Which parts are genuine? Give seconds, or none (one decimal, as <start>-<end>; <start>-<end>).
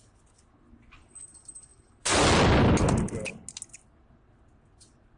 0.0-5.2